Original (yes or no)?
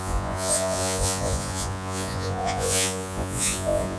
no